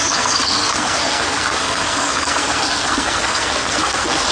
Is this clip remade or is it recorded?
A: remade